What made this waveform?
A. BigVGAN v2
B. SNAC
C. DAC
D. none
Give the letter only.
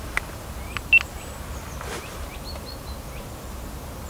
D